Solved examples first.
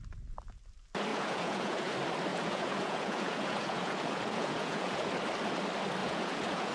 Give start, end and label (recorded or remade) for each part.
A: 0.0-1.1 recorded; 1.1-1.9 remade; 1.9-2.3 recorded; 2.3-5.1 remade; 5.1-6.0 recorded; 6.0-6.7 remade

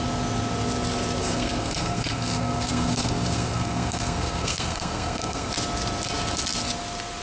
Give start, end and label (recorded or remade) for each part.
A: 0.0-1.2 recorded; 1.2-5.5 remade; 5.5-7.2 recorded